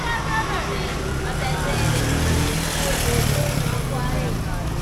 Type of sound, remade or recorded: recorded